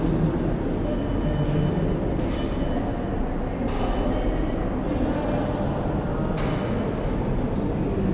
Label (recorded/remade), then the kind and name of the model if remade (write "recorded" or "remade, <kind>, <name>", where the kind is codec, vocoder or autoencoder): recorded